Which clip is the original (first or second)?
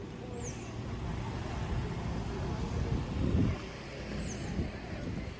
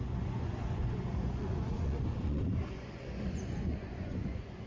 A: first